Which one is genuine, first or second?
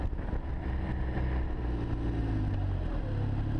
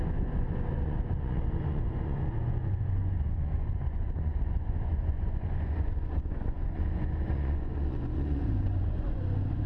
first